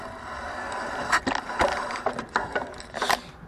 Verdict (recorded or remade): recorded